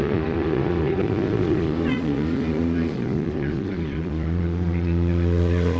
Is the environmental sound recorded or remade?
remade